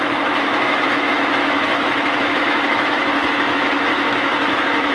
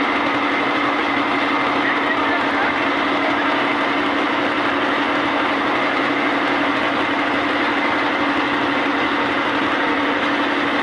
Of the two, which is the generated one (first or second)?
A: first